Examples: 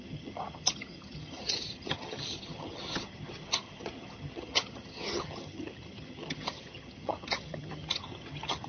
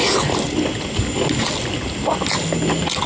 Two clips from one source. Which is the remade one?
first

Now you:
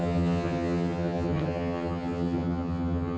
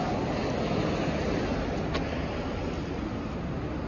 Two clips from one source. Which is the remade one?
first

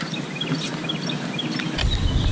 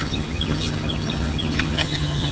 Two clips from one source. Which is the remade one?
second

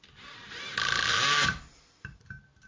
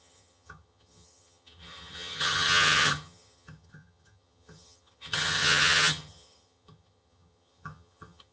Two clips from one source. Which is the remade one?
second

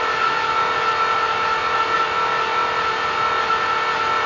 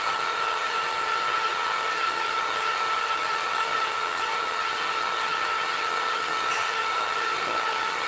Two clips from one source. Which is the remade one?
second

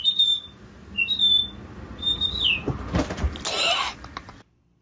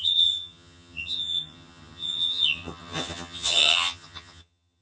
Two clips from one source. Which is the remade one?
second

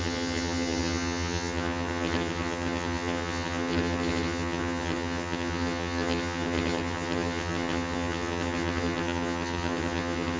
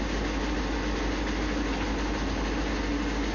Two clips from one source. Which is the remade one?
first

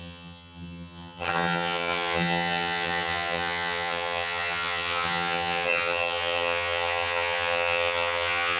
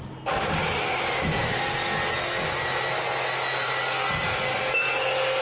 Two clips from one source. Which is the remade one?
first